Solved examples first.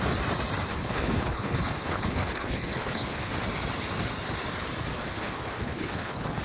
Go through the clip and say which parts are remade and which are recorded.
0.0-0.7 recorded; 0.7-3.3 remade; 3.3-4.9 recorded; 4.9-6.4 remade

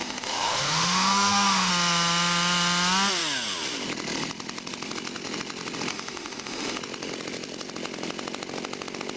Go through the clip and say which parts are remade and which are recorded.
0.0-1.7 remade; 1.7-5.9 recorded; 5.9-6.8 remade; 6.8-9.2 recorded

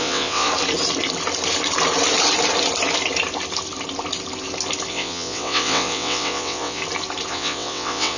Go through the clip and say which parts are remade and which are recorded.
0.0-0.5 remade; 0.5-4.9 recorded; 4.9-6.8 remade; 6.8-7.3 recorded; 7.3-8.2 remade